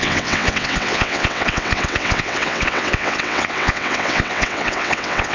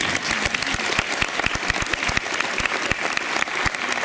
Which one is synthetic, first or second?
first